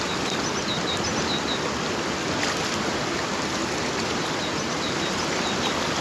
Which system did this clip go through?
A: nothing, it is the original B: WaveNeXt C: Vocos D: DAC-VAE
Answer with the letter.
A